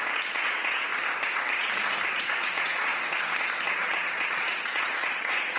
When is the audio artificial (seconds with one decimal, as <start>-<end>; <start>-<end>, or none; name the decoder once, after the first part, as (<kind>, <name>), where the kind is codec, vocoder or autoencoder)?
0.0-0.9 (vocoder, Vocos); 2.1-2.9; 3.7-5.6